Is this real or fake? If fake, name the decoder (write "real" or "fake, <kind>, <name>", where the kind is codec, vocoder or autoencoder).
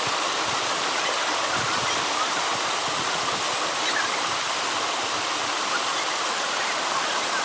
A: real